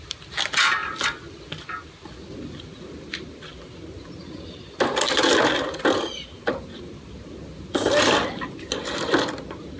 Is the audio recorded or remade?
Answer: recorded